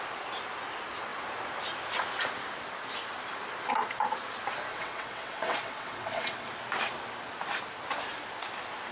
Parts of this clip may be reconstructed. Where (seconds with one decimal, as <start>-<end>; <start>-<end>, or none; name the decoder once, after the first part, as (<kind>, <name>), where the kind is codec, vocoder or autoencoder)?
4.7-6.5 (vocoder, WaveNeXt)

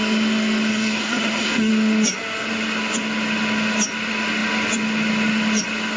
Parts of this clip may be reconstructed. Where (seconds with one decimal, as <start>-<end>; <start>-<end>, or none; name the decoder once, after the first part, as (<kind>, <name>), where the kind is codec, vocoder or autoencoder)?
0.7-1.7 (codec, SNAC)

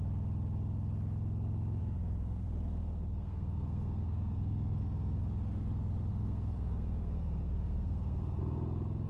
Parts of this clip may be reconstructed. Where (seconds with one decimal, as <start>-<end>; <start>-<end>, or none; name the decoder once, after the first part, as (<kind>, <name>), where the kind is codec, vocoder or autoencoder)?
1.8-5.2 (codec, SNAC); 6.1-8.4

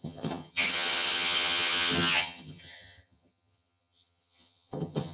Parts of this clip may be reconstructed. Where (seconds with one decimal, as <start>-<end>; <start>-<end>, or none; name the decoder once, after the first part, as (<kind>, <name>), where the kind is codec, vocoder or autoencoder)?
0.0-5.1 (vocoder, HiFi-GAN)

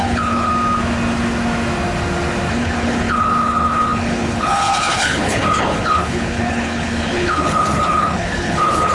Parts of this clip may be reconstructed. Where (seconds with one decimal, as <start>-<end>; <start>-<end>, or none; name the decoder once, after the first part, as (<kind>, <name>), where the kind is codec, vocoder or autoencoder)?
0.0-0.5 (codec, HILCodec); 2.5-8.9

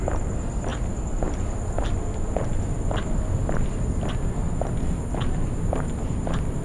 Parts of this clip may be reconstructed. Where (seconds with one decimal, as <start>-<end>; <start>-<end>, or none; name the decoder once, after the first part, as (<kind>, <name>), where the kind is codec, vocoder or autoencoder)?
none